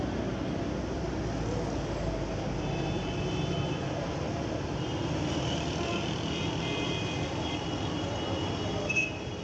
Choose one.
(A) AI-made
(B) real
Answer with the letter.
B